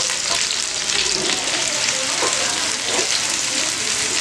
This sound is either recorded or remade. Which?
recorded